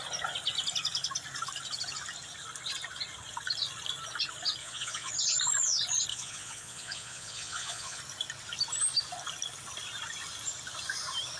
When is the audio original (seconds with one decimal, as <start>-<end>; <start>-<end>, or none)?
0.0-4.6; 5.1-6.1; 8.0-11.4